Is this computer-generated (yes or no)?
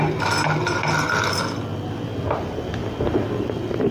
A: no